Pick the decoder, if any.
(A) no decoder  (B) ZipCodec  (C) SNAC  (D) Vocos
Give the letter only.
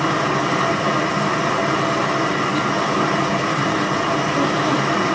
A